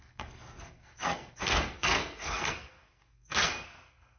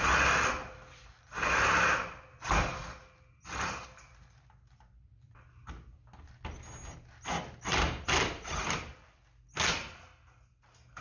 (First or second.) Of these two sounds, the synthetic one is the first